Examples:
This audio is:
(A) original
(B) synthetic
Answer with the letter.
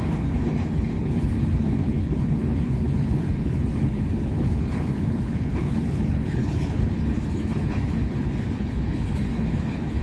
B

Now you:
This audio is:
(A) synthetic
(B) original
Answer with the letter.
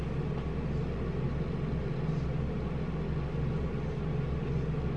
B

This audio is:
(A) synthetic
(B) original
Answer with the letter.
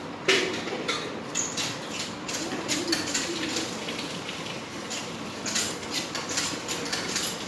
A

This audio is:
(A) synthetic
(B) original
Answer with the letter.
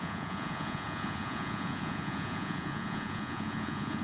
A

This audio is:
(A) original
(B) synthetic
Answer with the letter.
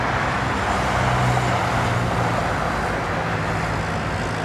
A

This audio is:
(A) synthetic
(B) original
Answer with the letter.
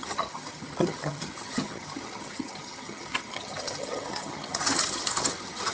A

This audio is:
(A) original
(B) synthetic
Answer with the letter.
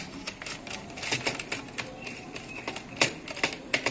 A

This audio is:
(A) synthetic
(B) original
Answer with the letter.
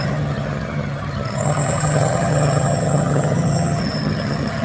A